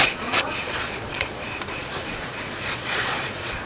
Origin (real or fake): fake